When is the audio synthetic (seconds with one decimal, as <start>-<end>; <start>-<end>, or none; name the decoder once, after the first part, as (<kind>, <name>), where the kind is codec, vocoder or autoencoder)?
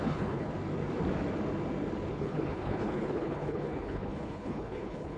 0.0-0.5 (codec, HILCodec); 2.1-5.2